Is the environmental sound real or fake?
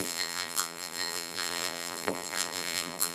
fake